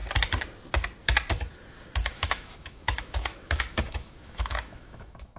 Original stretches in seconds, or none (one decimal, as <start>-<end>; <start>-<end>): 0.0-2.0